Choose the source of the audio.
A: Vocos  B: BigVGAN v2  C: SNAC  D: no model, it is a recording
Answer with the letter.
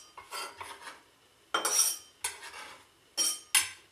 D